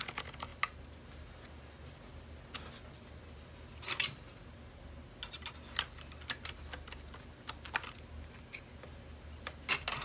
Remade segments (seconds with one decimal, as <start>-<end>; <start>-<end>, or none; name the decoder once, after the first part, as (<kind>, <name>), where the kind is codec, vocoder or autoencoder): none